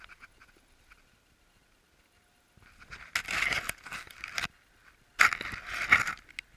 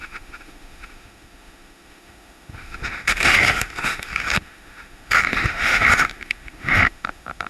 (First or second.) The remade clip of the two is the second